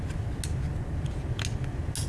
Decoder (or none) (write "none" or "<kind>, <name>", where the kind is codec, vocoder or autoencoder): none